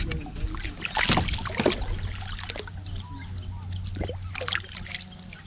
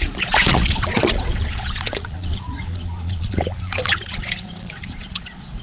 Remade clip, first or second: second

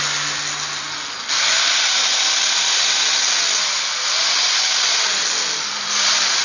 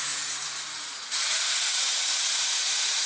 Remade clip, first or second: second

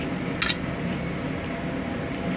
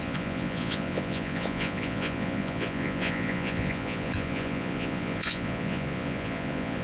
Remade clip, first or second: second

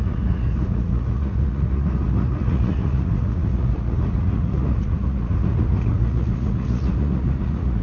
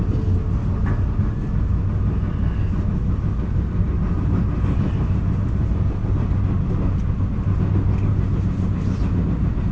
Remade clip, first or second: first